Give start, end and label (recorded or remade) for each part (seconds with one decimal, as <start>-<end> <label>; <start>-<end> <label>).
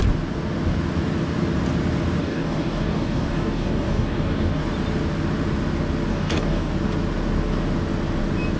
0.0-2.2 recorded; 2.2-4.6 remade; 4.6-6.1 recorded; 6.1-6.7 remade; 6.7-8.6 recorded